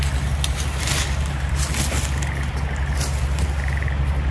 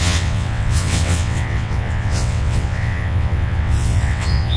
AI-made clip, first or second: second